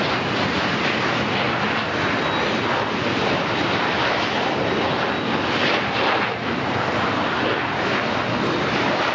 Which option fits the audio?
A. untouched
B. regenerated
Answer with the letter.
A